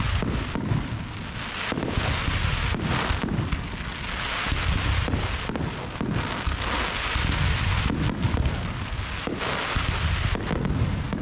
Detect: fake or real real